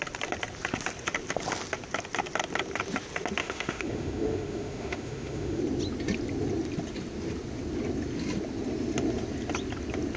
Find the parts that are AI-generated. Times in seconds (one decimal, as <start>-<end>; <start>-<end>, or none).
3.4-5.6